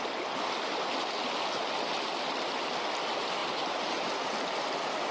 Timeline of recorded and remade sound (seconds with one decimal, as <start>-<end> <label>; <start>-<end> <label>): 0.0-5.1 recorded